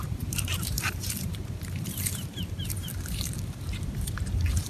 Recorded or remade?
remade